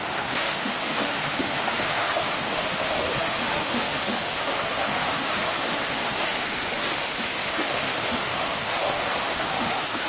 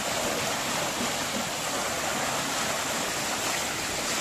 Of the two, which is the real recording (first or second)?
second